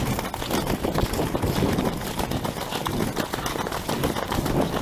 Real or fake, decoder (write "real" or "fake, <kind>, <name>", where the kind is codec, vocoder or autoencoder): real